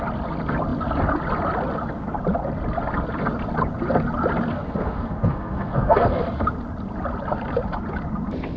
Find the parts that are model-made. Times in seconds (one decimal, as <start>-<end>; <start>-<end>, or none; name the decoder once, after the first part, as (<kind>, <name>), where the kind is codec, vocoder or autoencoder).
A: 4.5-6.2 (codec, SNAC)

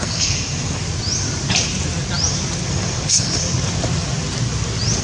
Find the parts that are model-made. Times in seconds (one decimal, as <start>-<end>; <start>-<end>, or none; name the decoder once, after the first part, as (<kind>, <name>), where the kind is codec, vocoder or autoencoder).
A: 0.0-0.8 (codec, SNAC); 2.7-3.4